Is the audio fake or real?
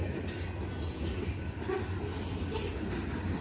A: real